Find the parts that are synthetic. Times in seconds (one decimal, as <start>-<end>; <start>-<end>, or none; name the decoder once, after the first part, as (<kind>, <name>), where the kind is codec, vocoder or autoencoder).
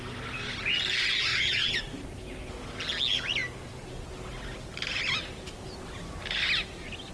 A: 1.3-1.8 (vocoder, Vocos)